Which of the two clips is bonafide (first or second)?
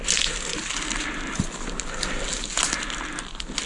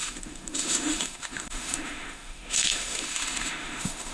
first